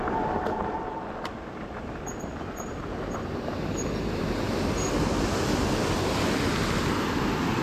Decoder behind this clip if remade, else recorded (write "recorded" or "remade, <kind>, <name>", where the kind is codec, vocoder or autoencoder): recorded